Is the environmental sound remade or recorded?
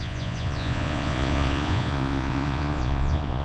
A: remade